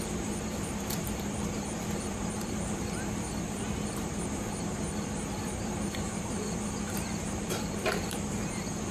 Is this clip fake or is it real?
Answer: fake